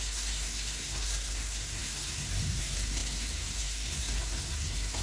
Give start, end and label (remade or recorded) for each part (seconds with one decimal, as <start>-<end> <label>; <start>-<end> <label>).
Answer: 0.0-5.0 remade